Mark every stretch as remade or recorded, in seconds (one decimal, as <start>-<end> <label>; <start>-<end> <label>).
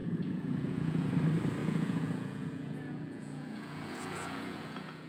0.0-1.1 remade; 1.1-1.6 recorded; 1.6-5.1 remade